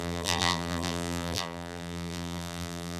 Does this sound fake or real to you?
fake